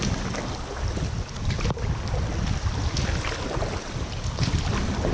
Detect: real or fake real